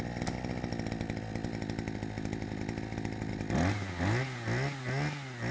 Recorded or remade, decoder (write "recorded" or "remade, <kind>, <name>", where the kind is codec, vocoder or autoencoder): recorded